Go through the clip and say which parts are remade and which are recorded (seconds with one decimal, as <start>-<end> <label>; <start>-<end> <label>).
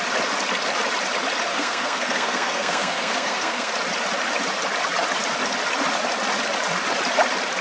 0.0-1.5 recorded; 1.5-3.7 remade; 3.7-7.6 recorded